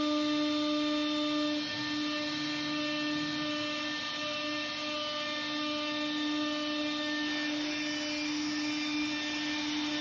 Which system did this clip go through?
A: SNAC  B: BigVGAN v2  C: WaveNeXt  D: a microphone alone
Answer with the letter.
D